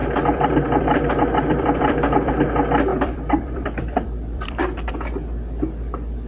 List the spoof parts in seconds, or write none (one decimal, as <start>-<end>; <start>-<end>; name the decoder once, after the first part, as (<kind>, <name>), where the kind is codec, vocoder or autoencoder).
0.0-2.3 (vocoder, BigVGAN v2); 2.9-4.9